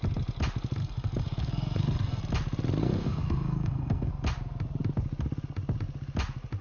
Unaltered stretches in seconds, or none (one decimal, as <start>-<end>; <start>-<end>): 0.0-0.8; 2.2-2.8; 4.1-6.6